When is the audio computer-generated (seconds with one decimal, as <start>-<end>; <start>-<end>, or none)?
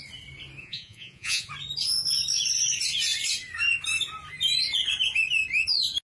0.6-1.5